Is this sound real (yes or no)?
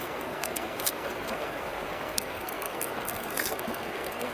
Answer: no